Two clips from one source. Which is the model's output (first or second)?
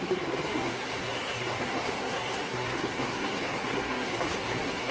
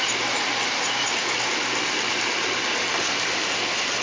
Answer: first